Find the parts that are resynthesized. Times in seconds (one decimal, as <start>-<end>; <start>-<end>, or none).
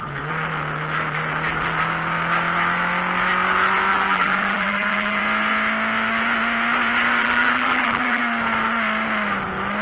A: 3.9-5.2; 7.2-8.2